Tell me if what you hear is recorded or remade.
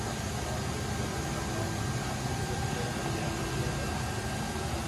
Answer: recorded